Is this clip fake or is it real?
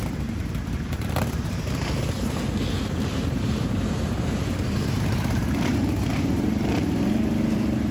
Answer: fake